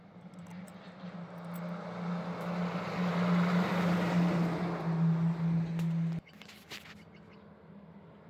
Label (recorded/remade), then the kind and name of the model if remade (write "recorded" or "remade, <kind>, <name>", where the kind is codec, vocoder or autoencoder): recorded